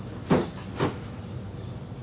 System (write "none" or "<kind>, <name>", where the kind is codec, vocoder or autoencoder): none